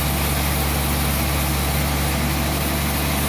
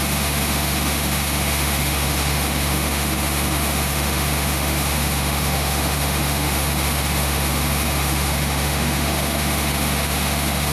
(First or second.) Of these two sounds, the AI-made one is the second